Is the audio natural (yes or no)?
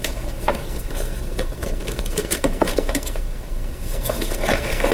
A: no